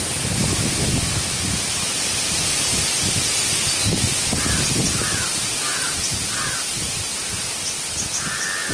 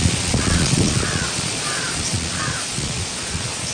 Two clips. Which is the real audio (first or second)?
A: first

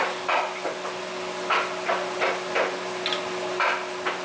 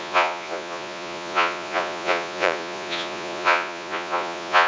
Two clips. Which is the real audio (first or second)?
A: first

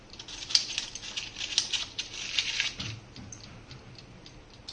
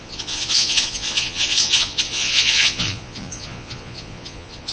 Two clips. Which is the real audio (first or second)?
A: first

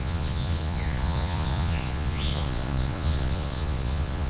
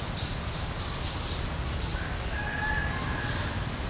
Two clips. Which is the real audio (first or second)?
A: second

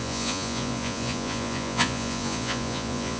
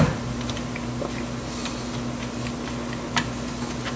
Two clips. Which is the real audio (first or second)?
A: second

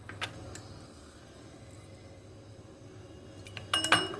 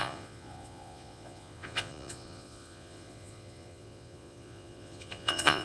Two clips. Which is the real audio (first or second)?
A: first